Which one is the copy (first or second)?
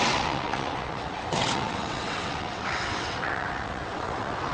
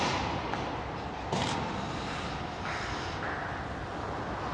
first